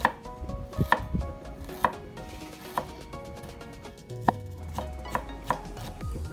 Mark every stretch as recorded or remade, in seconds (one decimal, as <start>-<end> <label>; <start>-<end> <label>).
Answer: 0.0-3.9 recorded; 3.9-4.6 remade; 4.6-6.3 recorded